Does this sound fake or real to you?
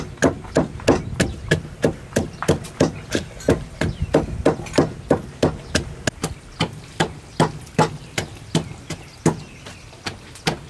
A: real